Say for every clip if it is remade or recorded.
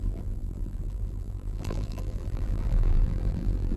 remade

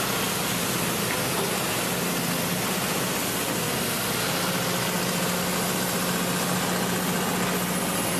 recorded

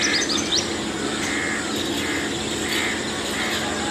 recorded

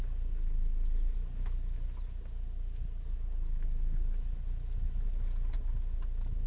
recorded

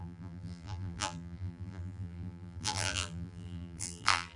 remade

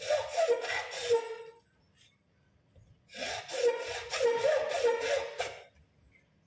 recorded